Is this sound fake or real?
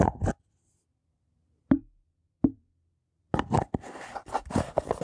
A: real